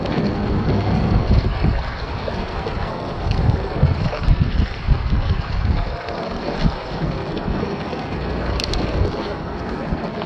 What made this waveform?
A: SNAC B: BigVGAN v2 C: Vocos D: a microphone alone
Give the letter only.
A